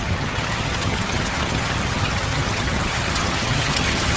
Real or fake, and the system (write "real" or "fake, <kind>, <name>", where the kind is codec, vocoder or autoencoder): fake, vocoder, HiFi-GAN